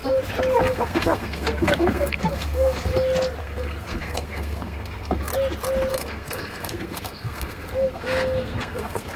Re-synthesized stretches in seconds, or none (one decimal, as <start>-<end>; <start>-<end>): 0.6-2.9; 3.4-5.3; 5.9-9.2